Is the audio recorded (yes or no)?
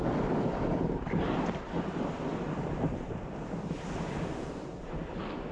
no